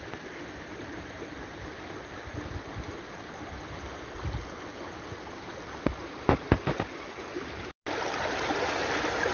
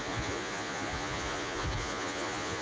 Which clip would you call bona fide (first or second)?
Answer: first